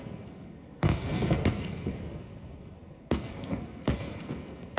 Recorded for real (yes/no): no